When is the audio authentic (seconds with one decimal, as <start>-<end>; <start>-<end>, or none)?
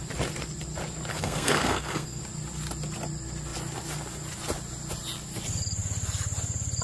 0.0-1.1; 2.2-6.8